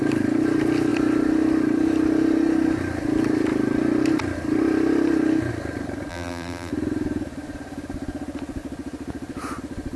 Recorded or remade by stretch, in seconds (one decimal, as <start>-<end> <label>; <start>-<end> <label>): 0.0-6.1 recorded; 6.1-6.7 remade; 6.7-10.0 recorded